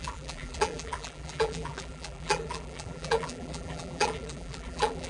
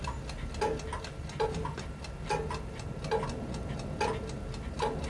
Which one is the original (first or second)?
second